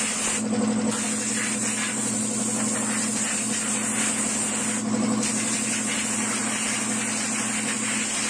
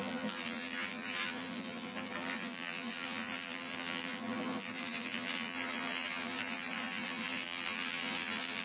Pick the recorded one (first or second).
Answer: first